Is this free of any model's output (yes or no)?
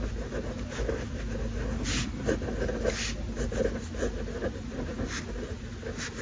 yes